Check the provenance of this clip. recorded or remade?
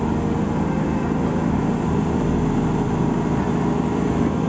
recorded